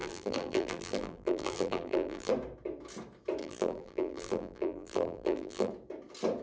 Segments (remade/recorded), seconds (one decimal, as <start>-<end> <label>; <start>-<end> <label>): 0.0-2.3 remade; 2.3-3.4 recorded; 3.4-5.7 remade; 5.7-6.4 recorded